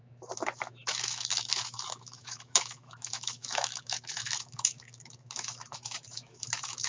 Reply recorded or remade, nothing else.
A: remade